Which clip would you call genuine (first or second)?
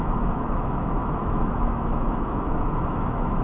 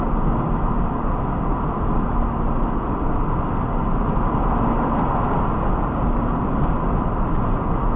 second